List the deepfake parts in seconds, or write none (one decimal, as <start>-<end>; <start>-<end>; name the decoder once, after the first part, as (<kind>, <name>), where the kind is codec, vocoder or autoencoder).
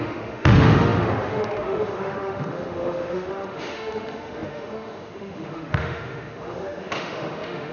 0.0-7.7 (autoencoder, DAC-VAE)